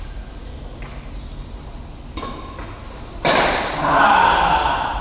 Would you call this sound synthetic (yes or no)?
no